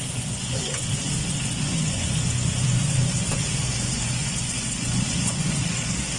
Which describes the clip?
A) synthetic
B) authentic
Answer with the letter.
A